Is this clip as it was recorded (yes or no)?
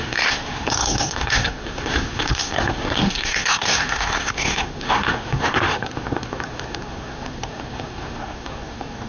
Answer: no